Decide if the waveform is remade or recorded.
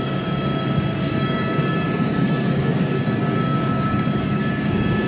remade